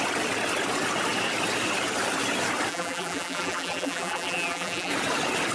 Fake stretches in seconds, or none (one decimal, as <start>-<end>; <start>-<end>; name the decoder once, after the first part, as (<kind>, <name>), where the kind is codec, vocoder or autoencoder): 2.7-4.9 (vocoder, BigVGAN v2)